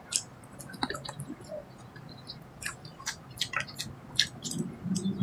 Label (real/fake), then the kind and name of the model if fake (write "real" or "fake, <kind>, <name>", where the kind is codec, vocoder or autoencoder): real